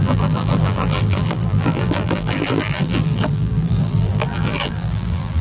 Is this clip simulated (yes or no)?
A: yes